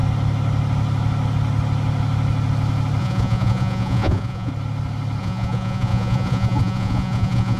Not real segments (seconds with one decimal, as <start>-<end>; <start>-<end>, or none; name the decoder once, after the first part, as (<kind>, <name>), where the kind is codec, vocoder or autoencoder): 3.0-4.5 (vocoder, Vocos); 5.2-7.6